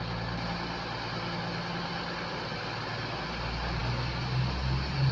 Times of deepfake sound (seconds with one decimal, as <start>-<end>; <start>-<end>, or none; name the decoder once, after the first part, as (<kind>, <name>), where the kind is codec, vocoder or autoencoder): none